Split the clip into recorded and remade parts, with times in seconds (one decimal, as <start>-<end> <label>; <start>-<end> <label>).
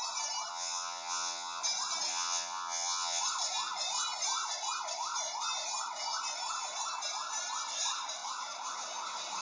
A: 0.0-0.5 recorded; 0.5-1.6 remade; 1.6-2.1 recorded; 2.1-3.2 remade; 3.2-9.4 recorded